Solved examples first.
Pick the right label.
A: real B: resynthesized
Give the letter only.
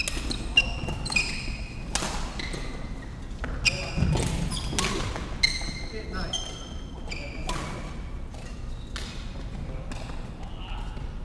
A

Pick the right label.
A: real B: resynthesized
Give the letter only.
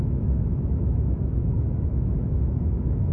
B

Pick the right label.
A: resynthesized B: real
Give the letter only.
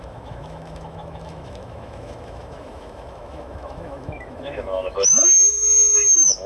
A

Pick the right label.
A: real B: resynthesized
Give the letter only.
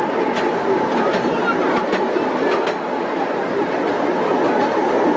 A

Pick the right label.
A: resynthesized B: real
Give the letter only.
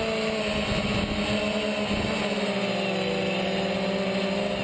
B